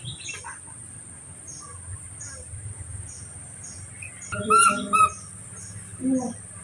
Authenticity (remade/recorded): recorded